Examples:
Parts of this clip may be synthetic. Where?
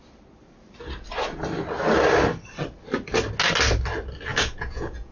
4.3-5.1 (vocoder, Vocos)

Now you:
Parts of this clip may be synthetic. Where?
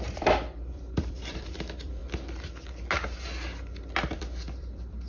0.0-2.0 (vocoder, BigVGAN v2); 4.2-5.1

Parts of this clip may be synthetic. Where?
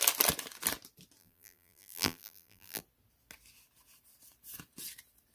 1.2-2.8 (vocoder, BigVGAN v2)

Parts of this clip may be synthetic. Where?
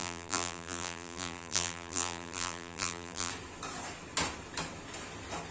0.0-3.3 (vocoder, BigVGAN v2)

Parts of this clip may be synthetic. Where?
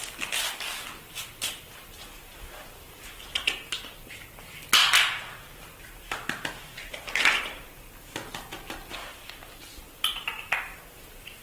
9.0-9.8 (vocoder, BigVGAN v2)